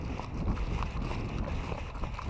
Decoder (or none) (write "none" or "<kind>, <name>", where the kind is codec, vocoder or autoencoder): none